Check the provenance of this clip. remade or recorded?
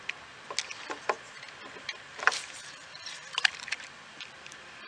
recorded